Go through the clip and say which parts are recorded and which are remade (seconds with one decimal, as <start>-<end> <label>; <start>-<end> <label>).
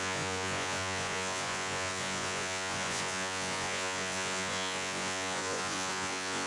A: 0.0-6.5 remade